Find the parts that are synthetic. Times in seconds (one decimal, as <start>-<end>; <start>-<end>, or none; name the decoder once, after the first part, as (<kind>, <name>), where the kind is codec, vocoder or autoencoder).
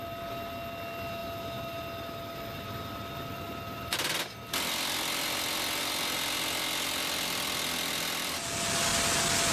none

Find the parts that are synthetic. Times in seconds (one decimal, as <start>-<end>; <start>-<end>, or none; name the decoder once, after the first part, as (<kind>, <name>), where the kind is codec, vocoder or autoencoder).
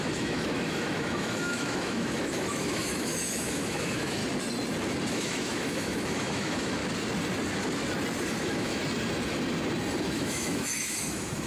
0.0-4.2 (autoencoder, DAC-VAE); 5.1-6.8; 8.4-8.8; 10.0-11.5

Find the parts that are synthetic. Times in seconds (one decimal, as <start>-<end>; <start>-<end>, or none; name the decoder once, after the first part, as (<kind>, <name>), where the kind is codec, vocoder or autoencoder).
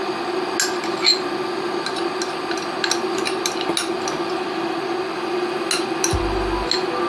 none